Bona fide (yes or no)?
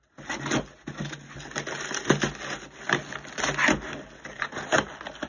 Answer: yes